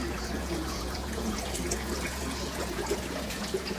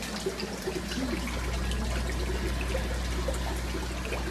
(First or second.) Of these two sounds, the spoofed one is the first